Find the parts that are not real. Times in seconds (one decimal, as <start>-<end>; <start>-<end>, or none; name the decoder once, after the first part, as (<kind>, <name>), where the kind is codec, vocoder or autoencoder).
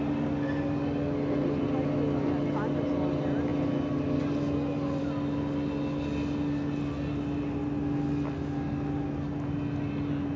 none